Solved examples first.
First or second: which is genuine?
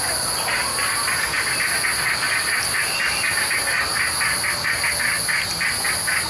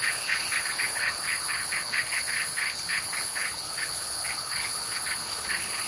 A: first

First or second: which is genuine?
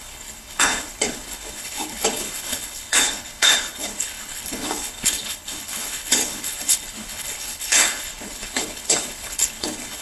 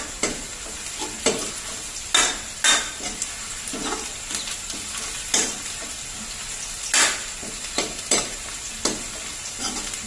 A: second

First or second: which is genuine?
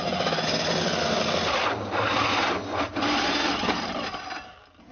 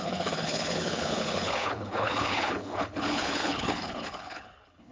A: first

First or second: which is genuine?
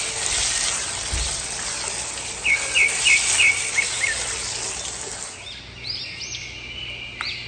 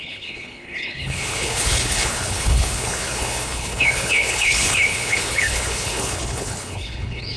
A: first